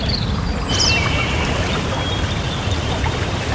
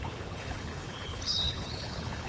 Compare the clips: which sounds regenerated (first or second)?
second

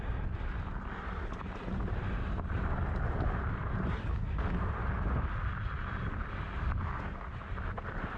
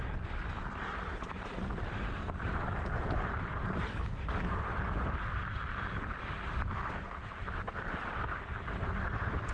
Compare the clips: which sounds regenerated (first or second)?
second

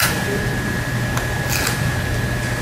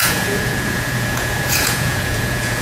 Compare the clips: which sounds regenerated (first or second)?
second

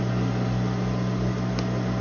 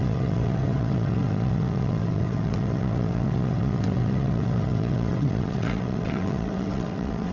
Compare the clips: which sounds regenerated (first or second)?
second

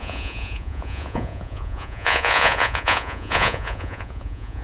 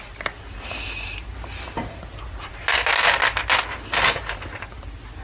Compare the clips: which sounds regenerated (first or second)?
first